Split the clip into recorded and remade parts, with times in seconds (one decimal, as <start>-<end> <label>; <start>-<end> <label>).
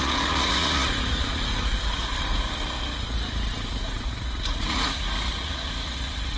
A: 0.0-2.1 remade; 2.1-3.5 recorded; 3.5-6.4 remade